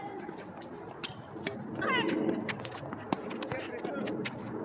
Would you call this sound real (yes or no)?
yes